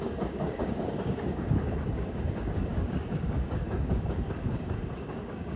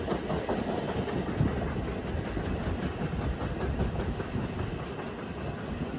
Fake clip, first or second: first